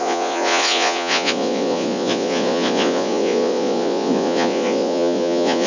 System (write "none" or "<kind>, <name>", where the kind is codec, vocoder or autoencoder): vocoder, Vocos